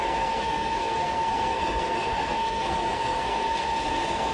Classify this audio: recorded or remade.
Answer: remade